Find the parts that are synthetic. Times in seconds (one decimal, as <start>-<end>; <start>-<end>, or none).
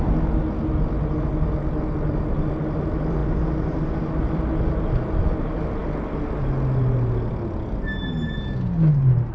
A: none